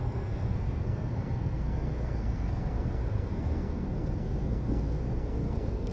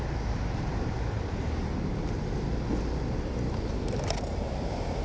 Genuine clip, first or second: second